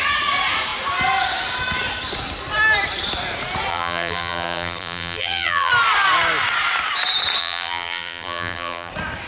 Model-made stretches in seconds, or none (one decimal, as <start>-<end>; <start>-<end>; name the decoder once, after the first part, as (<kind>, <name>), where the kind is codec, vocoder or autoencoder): 3.7-5.7 (vocoder, BigVGAN v2); 7.4-8.9